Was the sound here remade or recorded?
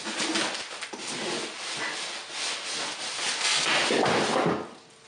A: recorded